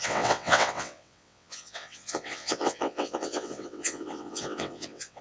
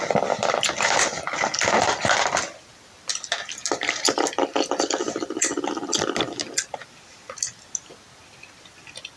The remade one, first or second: first